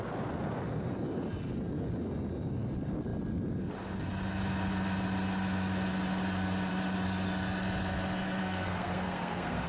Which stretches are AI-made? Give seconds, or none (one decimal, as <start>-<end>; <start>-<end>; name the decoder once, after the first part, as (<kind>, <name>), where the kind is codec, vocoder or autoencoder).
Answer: 8.4-9.7 (codec, SNAC)